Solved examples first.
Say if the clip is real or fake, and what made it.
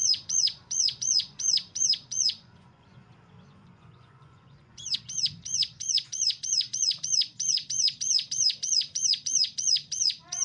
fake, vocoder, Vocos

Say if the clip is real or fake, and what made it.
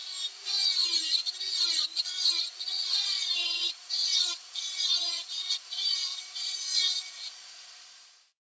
fake, vocoder, Vocos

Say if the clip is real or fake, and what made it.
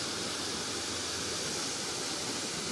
real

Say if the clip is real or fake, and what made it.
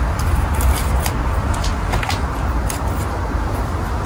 real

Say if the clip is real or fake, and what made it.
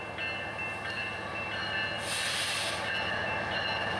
real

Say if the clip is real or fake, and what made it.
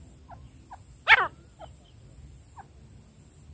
real